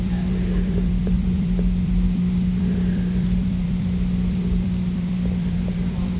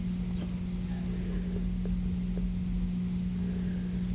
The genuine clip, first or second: second